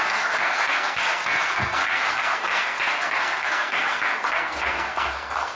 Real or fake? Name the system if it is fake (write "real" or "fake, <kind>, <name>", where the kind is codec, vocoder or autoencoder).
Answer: fake, codec, SNAC